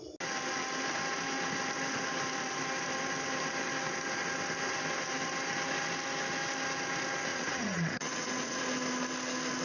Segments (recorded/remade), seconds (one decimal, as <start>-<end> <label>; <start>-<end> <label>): 0.0-7.3 recorded; 7.3-8.6 remade; 8.6-9.6 recorded